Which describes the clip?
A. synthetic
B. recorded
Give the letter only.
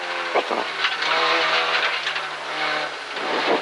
B